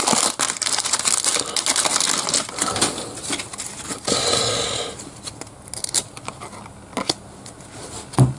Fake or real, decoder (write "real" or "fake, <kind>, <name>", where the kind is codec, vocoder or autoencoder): real